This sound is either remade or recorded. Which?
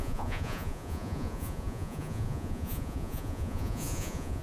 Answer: remade